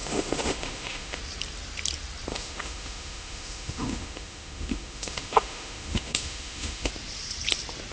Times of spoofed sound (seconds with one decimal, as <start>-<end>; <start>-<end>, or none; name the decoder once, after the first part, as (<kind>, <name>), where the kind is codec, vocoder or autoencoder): 0.0-1.2 (autoencoder, DAC-VAE); 2.3-6.9